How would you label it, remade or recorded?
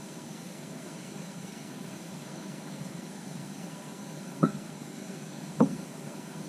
remade